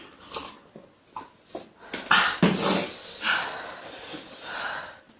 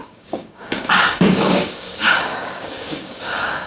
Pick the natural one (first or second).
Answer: first